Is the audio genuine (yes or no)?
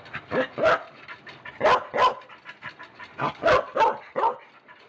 yes